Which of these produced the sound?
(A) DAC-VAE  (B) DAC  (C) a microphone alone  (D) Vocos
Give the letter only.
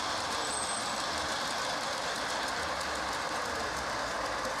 C